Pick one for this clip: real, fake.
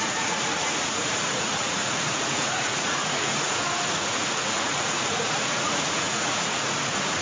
fake